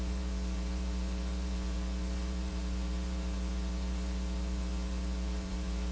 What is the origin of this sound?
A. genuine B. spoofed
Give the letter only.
B